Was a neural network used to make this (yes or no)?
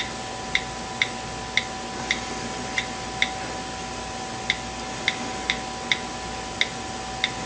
no